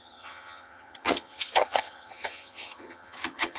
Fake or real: fake